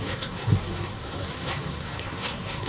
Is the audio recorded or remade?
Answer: remade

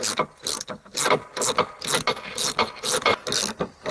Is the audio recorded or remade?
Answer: recorded